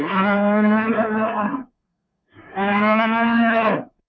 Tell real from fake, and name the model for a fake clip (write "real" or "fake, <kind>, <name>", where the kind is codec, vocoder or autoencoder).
fake, codec, SNAC